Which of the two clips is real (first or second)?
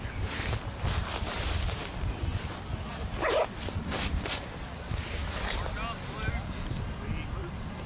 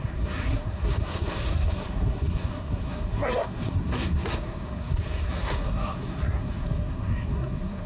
first